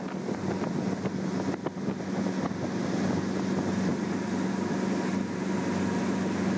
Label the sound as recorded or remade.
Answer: recorded